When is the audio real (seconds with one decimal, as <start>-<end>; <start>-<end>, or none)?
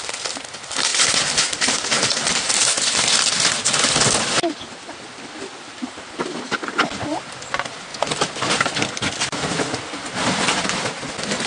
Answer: 0.0-0.9; 2.6-11.5